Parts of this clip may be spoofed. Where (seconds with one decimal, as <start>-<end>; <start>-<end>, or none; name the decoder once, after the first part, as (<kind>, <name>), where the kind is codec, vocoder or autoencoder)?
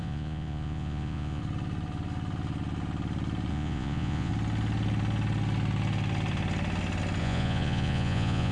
0.0-1.4 (vocoder, Vocos); 3.5-4.3; 7.2-8.5